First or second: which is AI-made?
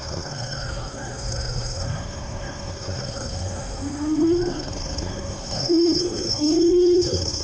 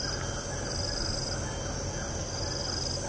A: first